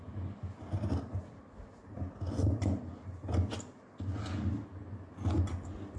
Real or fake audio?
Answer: real